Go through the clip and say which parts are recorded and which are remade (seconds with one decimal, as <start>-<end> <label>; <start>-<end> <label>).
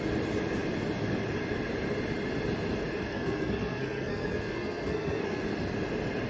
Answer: 0.0-3.1 recorded; 3.1-5.4 remade; 5.4-6.3 recorded